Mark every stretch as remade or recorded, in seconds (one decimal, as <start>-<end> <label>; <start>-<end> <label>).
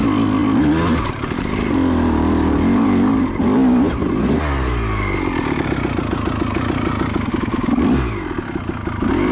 0.0-9.3 recorded